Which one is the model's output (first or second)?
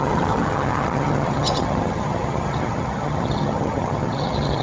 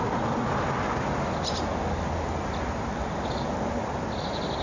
first